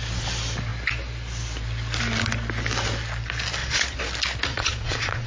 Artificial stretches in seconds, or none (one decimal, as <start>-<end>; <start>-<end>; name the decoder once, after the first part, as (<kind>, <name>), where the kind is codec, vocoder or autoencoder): 3.6-4.1 (vocoder, Vocos); 4.5-5.3